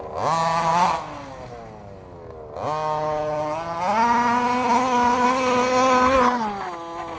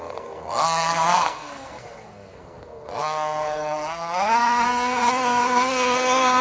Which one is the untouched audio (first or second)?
first